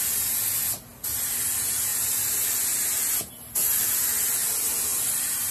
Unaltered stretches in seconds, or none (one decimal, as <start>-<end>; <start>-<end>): 0.0-4.9

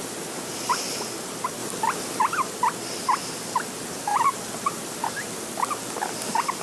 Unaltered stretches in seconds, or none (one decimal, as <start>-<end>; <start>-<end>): 0.0-6.6